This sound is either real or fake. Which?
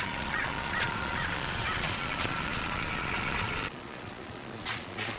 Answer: fake